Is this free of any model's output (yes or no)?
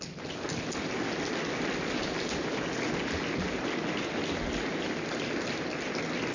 yes